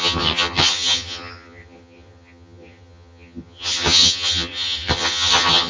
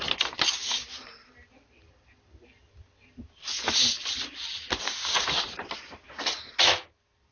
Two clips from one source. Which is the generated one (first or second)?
first